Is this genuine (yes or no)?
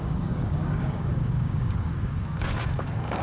no